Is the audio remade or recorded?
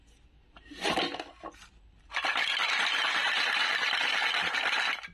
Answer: recorded